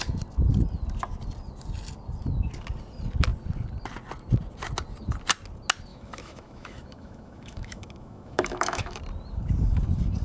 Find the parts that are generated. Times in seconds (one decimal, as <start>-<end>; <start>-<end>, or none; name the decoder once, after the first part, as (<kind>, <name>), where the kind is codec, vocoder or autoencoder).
5.9-9.0 (autoencoder, DAC-VAE)